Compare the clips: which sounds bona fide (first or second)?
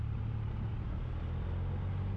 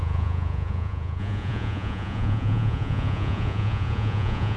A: first